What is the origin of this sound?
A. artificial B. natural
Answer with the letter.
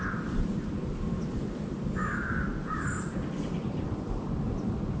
B